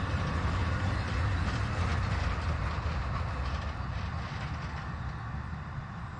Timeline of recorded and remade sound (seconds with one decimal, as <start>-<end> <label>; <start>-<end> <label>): 0.0-6.2 recorded